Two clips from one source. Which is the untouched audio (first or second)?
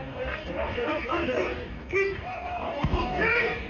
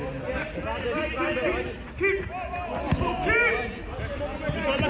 second